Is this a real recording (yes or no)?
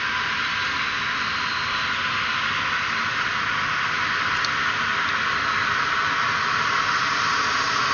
yes